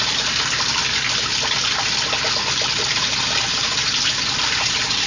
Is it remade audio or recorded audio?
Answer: recorded